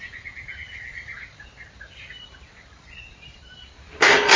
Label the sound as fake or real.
real